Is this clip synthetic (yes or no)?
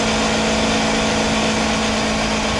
no